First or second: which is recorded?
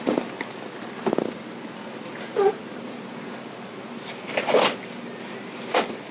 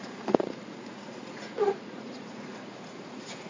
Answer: first